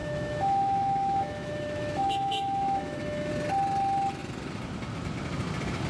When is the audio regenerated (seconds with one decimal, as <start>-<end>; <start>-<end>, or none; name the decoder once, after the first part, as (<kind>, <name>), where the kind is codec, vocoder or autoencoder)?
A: 0.0-3.3 (autoencoder, DAC-VAE)